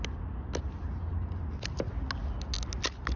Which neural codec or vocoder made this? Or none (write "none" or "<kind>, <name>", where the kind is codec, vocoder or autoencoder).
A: none